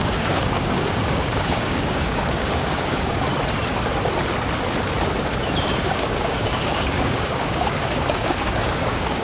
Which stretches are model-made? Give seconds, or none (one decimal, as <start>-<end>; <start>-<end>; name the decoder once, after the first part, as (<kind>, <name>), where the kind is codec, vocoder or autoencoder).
0.0-3.3 (codec, DAC); 5.8-9.2